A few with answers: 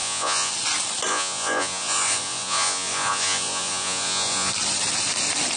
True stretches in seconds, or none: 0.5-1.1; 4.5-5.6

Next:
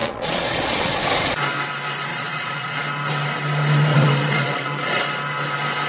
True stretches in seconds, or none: 1.0-2.1; 2.8-3.9; 5.0-5.9

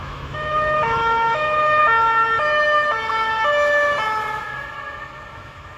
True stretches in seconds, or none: 1.8-5.3

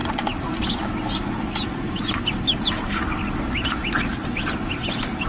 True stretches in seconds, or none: 0.0-5.3

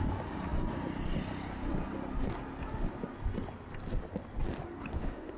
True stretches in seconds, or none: 0.0-4.9

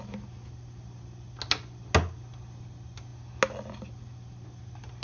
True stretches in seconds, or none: 0.0-5.0